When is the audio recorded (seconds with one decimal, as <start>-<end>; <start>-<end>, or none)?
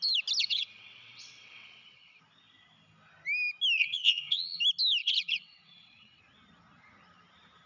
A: 0.0-0.4; 2.2-3.8; 4.6-5.0; 6.2-7.7